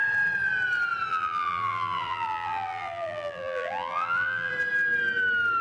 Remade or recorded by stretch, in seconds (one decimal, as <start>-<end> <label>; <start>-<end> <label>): 0.0-1.1 recorded; 1.1-4.5 remade; 4.5-5.6 recorded